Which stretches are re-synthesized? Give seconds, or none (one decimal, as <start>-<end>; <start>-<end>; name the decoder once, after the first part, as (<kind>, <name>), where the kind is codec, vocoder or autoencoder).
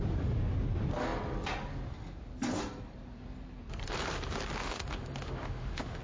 4.6-6.0 (autoencoder, DAC-VAE)